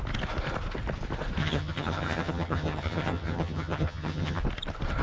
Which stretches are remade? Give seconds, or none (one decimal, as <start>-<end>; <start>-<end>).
1.4-4.4